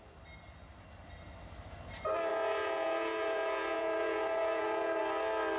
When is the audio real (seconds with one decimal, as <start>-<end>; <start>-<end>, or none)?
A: 0.0-2.3; 5.0-5.6